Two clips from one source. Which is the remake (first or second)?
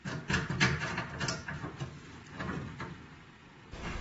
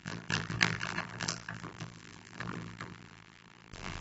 second